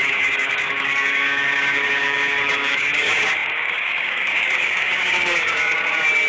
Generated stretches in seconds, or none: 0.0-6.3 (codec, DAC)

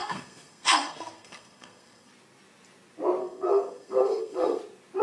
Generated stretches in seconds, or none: 0.0-2.1 (codec, SNAC); 3.2-4.6

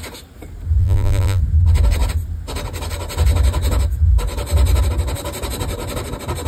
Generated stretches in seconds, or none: 0.8-1.4 (vocoder, BigVGAN v2)

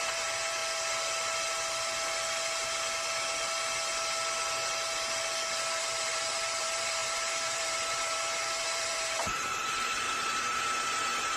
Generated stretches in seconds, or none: 0.0-0.6 (vocoder, BigVGAN v2); 5.8-11.4

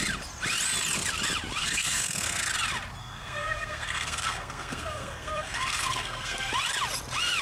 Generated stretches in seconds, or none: 1.6-2.5 (codec, SNAC); 3.0-6.5

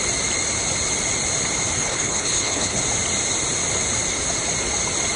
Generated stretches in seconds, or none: 1.8-2.8 (codec, HILCodec)

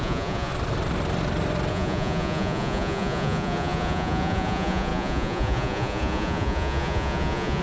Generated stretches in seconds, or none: 0.0-0.5 (vocoder, Vocos); 1.7-7.6